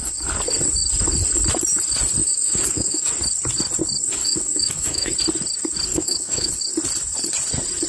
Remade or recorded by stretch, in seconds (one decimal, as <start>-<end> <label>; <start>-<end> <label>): 0.0-2.2 recorded; 2.2-3.1 remade; 3.1-4.2 recorded; 4.2-5.1 remade; 5.1-5.9 recorded; 5.9-6.5 remade; 6.5-7.9 recorded